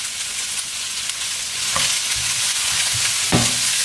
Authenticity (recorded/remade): remade